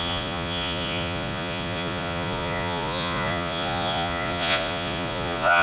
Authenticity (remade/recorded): remade